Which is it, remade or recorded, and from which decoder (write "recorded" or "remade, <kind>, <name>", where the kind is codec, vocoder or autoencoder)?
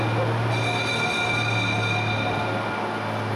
recorded